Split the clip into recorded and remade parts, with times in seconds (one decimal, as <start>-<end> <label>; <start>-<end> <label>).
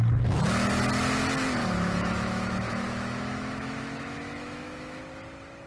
0.0-1.6 recorded; 1.6-5.0 remade; 5.0-5.7 recorded